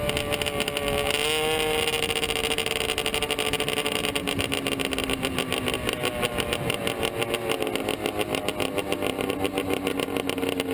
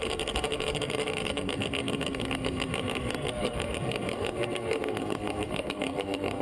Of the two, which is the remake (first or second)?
second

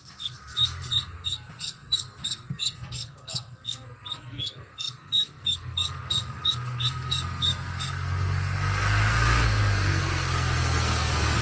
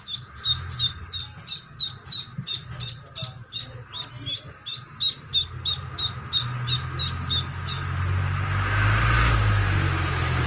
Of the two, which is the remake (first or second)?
first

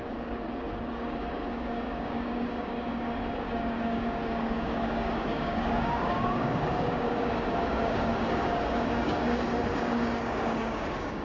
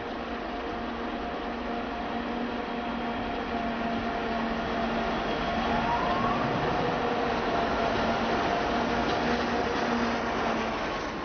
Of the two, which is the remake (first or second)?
first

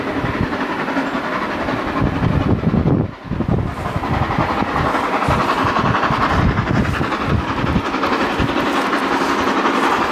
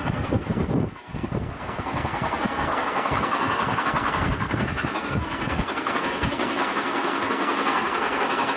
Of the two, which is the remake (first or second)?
second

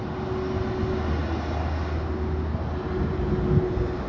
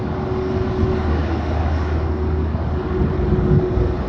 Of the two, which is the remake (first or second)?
second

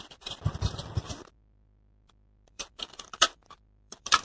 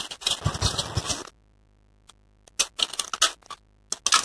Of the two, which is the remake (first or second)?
first